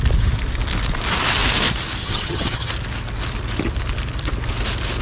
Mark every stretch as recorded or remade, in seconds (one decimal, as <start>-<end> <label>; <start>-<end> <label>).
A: 0.0-2.0 recorded; 2.0-2.7 remade; 2.7-5.0 recorded